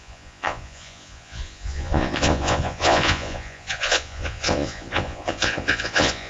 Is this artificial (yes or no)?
yes